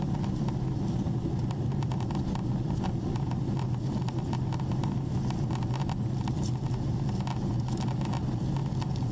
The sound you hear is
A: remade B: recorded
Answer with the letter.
B